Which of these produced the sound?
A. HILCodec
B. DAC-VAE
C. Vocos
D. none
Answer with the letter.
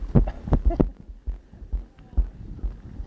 D